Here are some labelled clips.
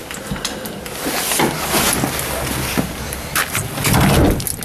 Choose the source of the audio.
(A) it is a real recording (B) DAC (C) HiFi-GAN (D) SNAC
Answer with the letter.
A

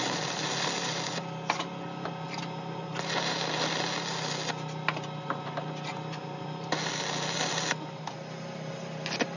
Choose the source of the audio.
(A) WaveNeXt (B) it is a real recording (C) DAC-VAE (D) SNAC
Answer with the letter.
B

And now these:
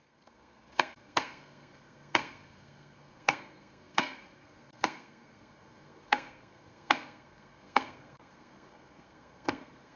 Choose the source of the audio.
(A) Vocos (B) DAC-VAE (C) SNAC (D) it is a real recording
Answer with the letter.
C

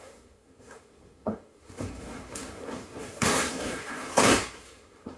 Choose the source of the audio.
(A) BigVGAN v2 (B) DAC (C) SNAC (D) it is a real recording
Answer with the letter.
C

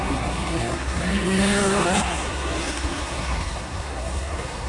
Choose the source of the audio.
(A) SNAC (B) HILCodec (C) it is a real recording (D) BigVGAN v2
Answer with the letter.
A